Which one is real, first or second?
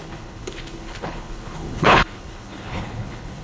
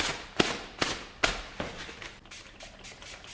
second